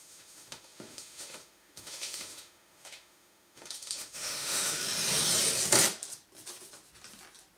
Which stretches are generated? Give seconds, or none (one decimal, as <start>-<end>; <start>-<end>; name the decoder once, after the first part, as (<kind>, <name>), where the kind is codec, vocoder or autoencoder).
0.0-4.8 (autoencoder, DAC-VAE)